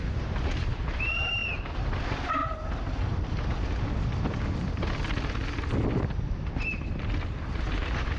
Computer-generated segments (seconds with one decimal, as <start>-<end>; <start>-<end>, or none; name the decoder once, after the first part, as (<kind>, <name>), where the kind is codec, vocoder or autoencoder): 1.4-1.9 (vocoder, BigVGAN v2); 5.4-8.2